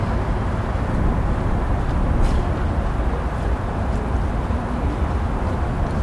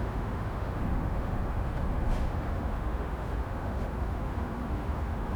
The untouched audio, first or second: first